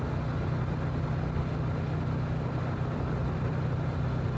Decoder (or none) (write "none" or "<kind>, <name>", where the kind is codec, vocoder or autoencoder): none